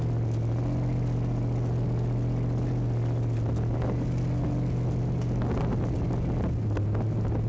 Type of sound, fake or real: real